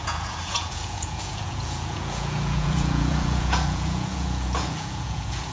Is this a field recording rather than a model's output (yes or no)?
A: no